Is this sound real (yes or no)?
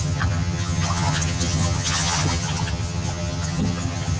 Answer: no